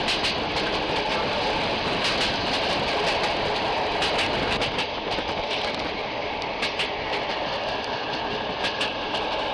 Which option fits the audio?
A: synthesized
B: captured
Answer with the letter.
B